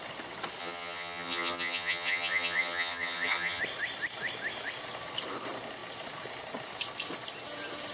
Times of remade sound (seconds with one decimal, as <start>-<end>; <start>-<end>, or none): 0.6-3.6